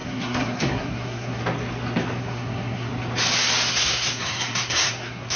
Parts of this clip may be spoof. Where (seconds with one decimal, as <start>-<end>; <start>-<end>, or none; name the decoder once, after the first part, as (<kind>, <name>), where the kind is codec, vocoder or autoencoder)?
0.0-1.4 (codec, SNAC); 2.2-2.9; 3.7-5.4